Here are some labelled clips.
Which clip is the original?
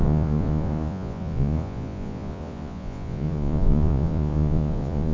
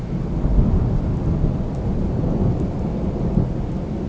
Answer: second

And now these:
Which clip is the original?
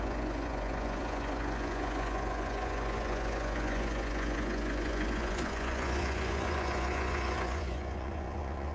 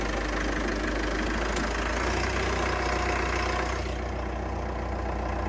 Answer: second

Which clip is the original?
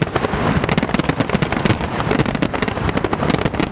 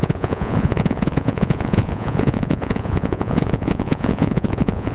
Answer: first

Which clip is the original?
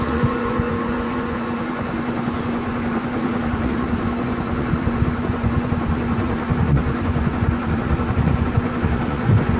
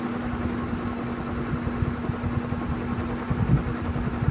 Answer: second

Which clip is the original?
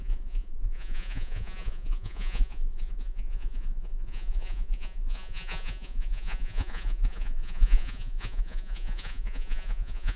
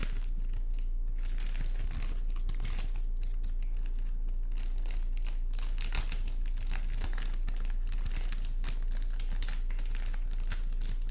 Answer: second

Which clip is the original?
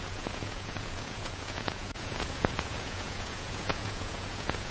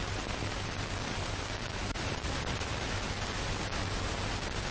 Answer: second